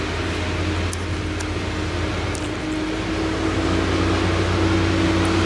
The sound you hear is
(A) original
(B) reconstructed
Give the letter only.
A